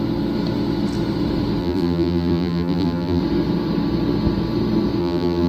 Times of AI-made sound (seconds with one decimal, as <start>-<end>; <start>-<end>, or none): 1.6-3.2; 5.0-5.5